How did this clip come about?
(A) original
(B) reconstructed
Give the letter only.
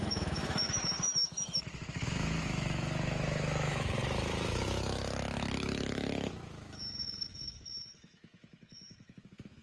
B